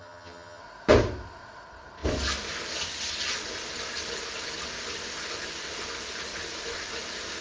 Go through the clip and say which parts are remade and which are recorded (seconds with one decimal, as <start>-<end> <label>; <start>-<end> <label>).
0.0-0.6 remade; 0.6-7.4 recorded